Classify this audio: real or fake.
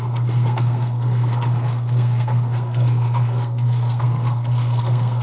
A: fake